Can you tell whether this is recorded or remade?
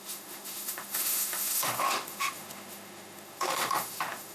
remade